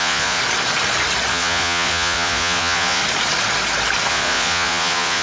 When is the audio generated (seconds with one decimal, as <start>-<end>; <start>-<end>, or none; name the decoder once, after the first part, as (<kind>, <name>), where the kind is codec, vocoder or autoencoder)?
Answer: 0.0-0.4 (vocoder, Vocos); 1.3-3.0; 4.1-5.2